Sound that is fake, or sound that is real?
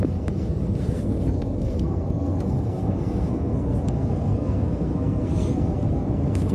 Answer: fake